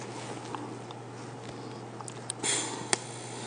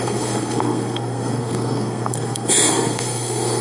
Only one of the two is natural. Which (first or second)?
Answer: first